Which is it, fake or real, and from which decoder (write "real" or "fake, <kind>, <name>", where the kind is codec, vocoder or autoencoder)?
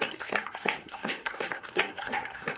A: fake, codec, SNAC